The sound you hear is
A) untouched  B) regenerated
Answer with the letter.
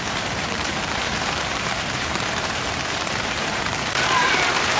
B